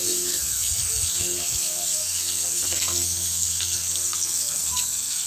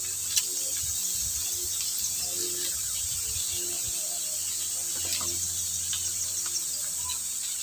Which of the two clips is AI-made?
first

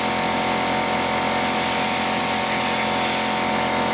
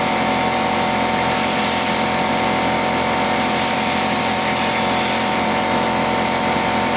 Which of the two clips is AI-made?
second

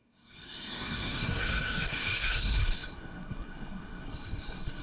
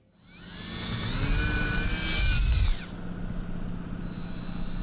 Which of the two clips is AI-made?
first